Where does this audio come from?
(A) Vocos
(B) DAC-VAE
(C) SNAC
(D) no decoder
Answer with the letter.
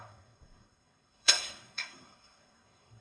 C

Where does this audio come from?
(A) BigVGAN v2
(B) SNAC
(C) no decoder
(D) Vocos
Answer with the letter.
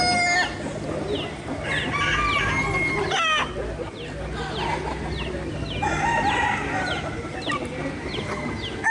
C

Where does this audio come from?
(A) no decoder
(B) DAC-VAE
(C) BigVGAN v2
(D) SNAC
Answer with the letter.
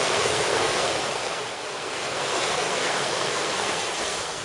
D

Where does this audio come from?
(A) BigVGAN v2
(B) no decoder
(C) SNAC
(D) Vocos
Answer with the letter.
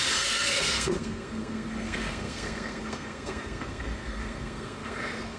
C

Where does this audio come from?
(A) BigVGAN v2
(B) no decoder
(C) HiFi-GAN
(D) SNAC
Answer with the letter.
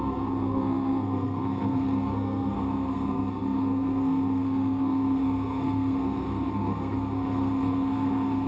D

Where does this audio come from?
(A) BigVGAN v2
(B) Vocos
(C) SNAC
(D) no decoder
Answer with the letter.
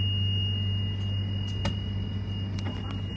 D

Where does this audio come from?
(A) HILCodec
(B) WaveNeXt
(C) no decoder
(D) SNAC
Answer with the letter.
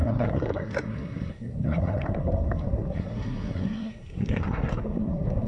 D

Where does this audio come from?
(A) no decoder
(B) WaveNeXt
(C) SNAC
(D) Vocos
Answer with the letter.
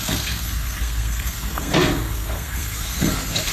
C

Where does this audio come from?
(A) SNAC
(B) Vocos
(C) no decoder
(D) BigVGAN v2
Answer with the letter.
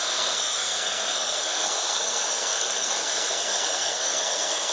A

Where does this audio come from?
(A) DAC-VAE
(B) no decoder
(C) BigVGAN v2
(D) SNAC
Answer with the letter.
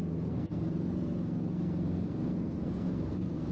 D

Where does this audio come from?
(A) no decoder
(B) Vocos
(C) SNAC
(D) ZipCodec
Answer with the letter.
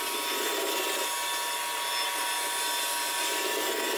A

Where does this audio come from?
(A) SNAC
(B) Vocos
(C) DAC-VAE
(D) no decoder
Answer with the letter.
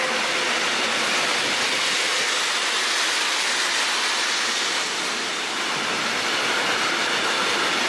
D